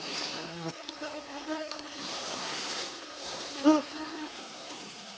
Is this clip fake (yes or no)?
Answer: yes